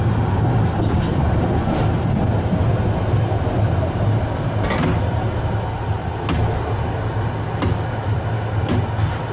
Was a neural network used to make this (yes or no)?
no